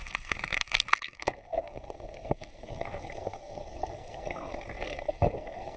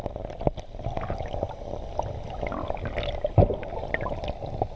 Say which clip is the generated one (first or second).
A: first